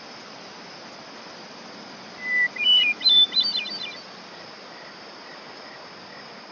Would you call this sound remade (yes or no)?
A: no